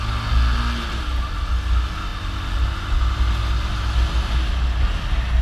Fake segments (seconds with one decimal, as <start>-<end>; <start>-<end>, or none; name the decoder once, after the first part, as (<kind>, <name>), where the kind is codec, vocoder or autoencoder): none

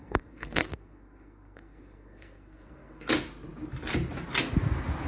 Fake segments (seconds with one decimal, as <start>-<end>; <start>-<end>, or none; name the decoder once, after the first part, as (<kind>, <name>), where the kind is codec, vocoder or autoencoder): 0.0-3.1 (codec, SNAC)

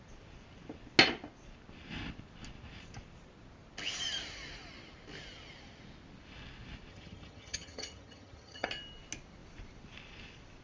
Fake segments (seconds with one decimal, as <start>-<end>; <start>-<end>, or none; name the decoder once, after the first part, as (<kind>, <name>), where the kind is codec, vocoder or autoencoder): 6.9-8.7 (vocoder, HiFi-GAN)

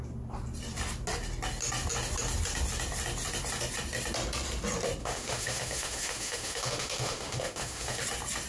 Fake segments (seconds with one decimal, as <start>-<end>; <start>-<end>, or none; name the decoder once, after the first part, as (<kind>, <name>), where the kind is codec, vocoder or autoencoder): 5.0-8.0 (autoencoder, DAC-VAE)

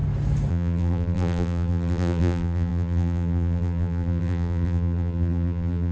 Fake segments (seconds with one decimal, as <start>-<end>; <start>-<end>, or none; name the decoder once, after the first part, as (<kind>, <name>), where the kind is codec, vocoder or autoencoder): 0.5-5.9 (vocoder, BigVGAN v2)

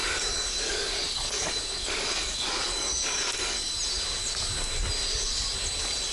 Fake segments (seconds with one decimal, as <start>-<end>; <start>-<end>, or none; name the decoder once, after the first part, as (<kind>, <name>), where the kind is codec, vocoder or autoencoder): 0.0-3.7 (codec, DAC)

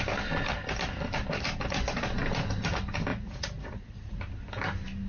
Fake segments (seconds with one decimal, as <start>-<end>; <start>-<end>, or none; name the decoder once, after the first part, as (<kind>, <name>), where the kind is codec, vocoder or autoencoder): 3.1-4.2 (vocoder, Vocos)

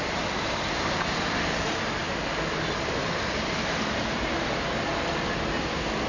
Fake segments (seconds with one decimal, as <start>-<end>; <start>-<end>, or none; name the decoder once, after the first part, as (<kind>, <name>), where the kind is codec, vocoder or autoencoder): 0.0-2.0 (vocoder, BigVGAN v2); 3.5-4.9